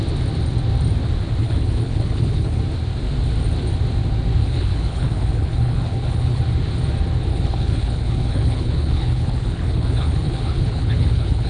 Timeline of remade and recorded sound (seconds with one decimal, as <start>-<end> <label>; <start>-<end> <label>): 0.0-1.4 recorded; 1.4-2.6 remade; 2.6-4.4 recorded; 4.4-6.4 remade; 6.4-7.3 recorded; 7.3-11.5 remade